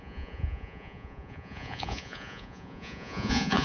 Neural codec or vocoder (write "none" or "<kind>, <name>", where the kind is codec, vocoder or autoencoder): vocoder, Vocos